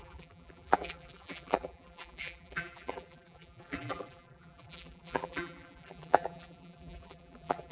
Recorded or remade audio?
remade